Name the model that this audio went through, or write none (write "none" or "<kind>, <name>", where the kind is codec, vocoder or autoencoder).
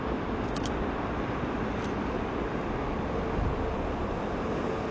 none